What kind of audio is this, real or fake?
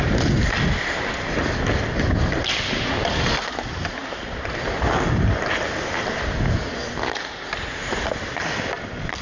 real